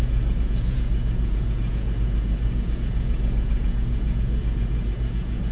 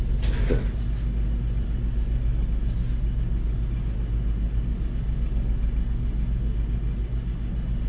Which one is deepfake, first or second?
first